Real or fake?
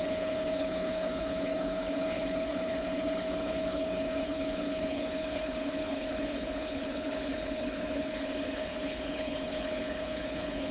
fake